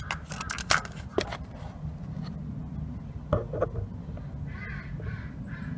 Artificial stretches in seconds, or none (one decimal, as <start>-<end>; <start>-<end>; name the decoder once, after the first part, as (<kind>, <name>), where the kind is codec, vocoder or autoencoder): none